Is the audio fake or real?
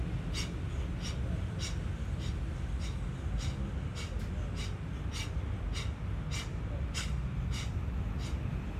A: real